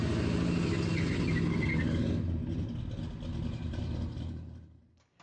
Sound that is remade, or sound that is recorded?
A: recorded